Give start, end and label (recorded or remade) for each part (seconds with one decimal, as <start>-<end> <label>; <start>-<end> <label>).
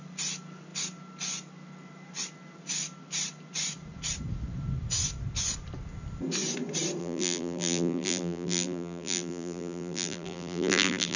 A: 0.0-7.0 recorded; 7.0-11.2 remade